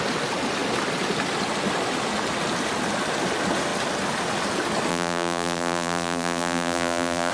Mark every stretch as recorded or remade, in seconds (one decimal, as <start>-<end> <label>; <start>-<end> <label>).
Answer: 0.0-4.9 recorded; 4.9-7.3 remade